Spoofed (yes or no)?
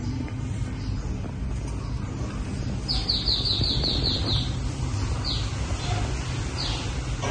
no